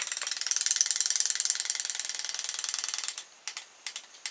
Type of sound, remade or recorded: recorded